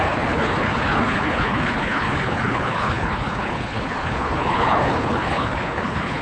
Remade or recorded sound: remade